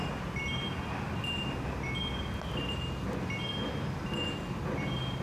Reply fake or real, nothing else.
real